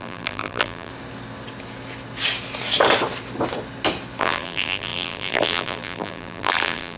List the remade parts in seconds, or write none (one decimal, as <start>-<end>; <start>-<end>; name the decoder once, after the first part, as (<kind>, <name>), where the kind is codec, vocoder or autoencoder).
0.0-0.9 (vocoder, BigVGAN v2); 4.2-7.0